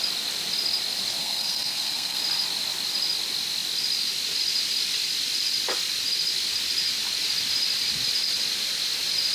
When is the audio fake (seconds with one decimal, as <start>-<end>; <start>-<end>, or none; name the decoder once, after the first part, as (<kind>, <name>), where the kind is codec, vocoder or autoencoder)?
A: 1.2-2.2 (codec, SNAC)